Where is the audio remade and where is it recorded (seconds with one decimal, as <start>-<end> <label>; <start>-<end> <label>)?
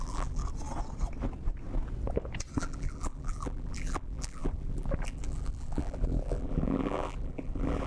0.0-0.4 remade; 0.4-2.6 recorded; 2.6-7.9 remade